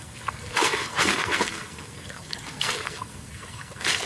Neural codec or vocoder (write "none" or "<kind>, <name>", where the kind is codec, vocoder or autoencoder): codec, SNAC